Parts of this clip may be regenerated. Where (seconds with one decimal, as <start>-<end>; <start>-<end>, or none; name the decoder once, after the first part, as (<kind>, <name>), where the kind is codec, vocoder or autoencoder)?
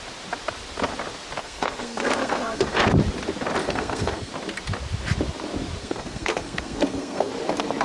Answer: 1.4-2.8 (codec, SNAC); 3.6-4.3; 5.8-7.3